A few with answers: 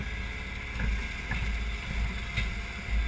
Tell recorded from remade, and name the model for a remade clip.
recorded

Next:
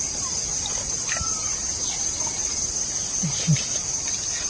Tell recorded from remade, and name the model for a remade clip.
recorded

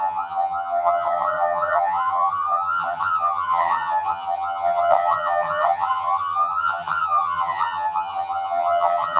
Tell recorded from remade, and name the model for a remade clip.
remade, vocoder, HiFi-GAN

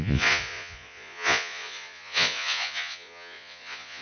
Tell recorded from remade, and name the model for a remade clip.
remade, vocoder, Vocos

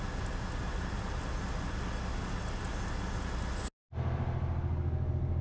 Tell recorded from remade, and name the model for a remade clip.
recorded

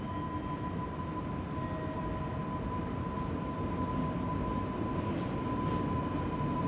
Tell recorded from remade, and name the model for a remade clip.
recorded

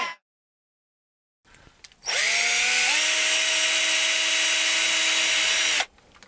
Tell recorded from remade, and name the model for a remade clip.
recorded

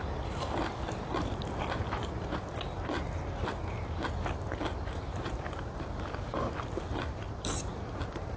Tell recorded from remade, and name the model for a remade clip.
recorded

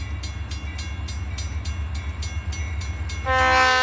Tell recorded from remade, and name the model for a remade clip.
recorded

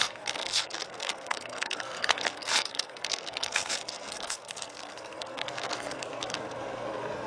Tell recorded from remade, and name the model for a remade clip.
remade, codec, SNAC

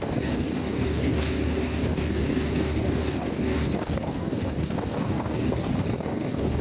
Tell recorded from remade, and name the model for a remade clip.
remade, codec, DAC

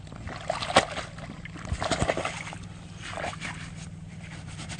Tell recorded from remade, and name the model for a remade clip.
recorded